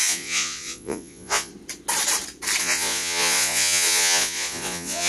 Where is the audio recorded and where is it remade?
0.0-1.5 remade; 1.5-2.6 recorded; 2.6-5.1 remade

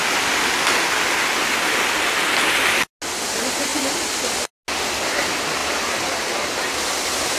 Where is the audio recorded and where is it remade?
0.0-7.4 recorded

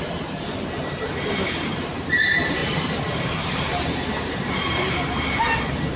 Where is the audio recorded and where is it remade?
0.0-6.0 remade

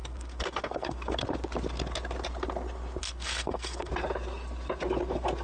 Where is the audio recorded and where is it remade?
0.0-1.2 remade; 1.2-3.0 recorded; 3.0-3.9 remade; 3.9-5.4 recorded

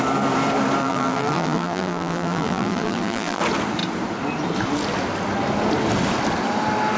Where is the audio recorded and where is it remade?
0.0-0.8 recorded; 0.8-3.4 remade; 3.4-7.0 recorded

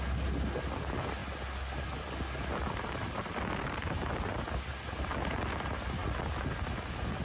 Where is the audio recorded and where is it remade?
0.0-7.2 recorded

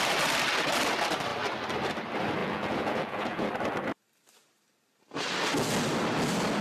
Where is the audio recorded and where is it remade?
0.0-2.4 recorded; 2.4-3.5 remade; 3.5-6.6 recorded

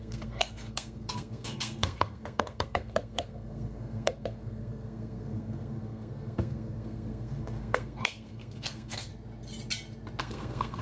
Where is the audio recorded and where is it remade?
0.0-9.1 remade; 9.1-10.2 recorded; 10.2-10.8 remade